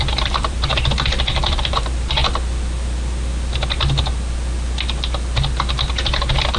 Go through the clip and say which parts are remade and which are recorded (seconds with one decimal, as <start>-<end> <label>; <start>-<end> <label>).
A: 0.0-0.7 remade; 0.7-1.4 recorded; 1.4-2.2 remade; 2.2-6.6 recorded